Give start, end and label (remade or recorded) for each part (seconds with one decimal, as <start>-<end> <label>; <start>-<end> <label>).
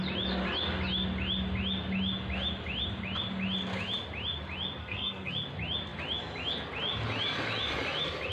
0.0-4.8 recorded; 4.8-5.3 remade; 5.3-8.3 recorded